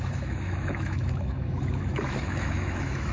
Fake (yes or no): yes